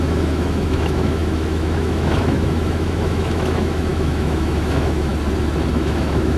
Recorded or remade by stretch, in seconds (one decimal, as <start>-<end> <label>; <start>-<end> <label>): 0.0-5.1 remade; 5.1-5.7 recorded; 5.7-6.4 remade